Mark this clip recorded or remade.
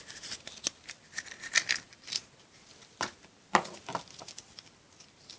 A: recorded